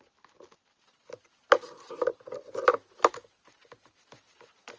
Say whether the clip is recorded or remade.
recorded